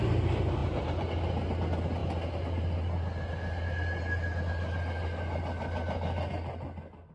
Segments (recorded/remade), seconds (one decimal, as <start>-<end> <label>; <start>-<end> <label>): 0.0-0.6 recorded; 0.6-1.1 remade; 1.1-7.1 recorded